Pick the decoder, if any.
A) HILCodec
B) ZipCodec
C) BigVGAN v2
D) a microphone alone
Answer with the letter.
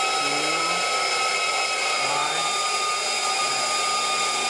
D